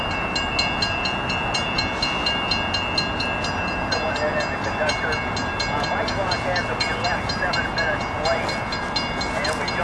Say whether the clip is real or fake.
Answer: real